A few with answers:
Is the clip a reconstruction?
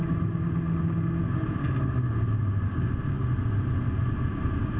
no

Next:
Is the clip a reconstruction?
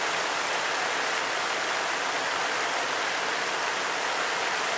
no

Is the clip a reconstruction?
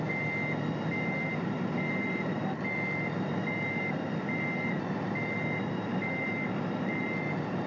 no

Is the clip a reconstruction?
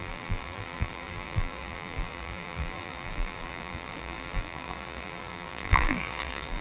yes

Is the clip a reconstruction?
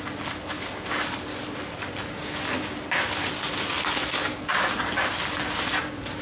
no